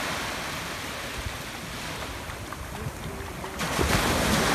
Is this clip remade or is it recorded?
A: recorded